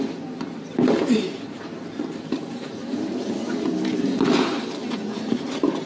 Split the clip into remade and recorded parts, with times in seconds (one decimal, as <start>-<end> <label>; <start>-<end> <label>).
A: 0.0-0.7 recorded; 0.7-4.2 remade; 4.2-5.9 recorded